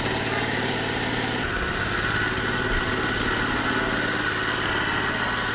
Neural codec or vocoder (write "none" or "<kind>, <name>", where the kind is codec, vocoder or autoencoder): none